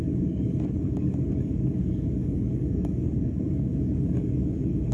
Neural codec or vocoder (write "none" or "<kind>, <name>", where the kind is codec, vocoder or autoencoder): codec, DAC